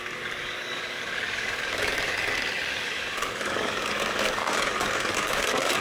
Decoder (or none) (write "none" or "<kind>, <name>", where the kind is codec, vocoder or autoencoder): codec, DAC